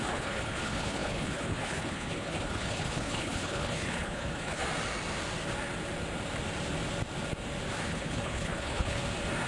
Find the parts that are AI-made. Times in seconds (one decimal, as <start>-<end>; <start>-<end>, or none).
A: 0.0-4.6; 7.9-9.0